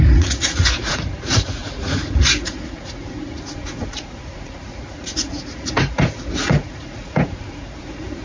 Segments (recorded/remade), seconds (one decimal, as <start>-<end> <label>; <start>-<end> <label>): 0.0-8.2 remade